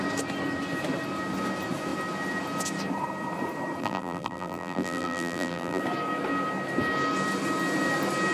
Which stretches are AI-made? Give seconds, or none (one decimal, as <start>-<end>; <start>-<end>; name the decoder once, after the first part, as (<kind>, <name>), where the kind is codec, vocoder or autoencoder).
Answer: 3.8-5.8 (vocoder, BigVGAN v2)